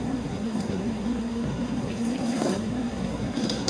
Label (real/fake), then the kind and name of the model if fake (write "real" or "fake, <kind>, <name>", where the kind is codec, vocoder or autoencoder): fake, codec, SNAC